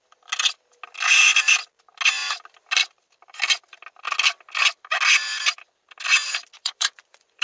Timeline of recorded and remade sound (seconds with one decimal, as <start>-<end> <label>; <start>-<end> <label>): 0.0-6.6 recorded; 6.6-7.4 remade